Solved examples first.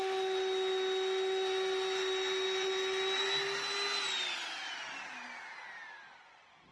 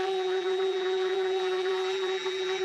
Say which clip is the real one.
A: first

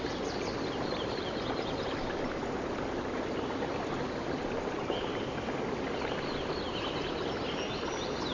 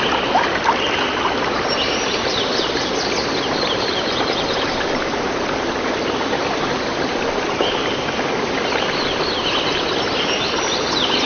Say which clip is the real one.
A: first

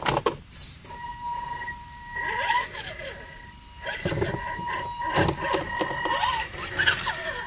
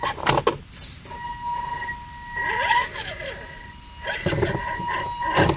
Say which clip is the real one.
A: second